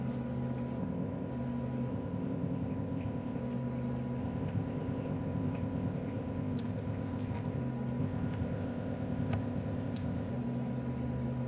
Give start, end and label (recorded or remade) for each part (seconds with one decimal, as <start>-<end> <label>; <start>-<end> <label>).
0.0-0.8 recorded; 0.8-1.3 remade; 1.3-1.9 recorded; 1.9-3.4 remade; 3.4-4.2 recorded; 4.2-7.6 remade; 7.6-8.0 recorded; 8.0-10.3 remade; 10.3-11.5 recorded